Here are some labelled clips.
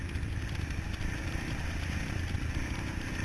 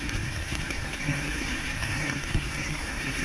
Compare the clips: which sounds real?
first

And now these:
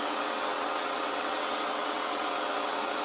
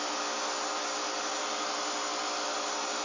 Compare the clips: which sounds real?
second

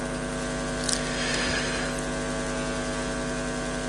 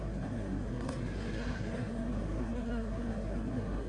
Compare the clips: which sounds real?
first